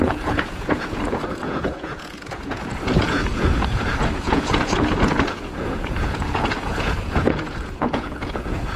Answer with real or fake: fake